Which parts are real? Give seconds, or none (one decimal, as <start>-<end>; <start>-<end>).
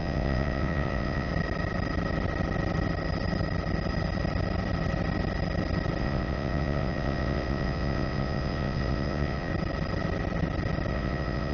1.3-6.0; 9.5-10.9